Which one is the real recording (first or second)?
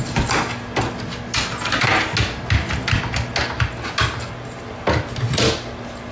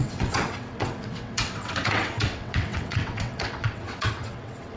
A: first